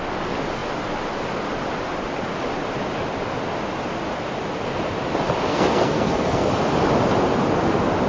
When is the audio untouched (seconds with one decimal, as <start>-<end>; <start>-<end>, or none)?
0.0-5.5; 6.5-8.1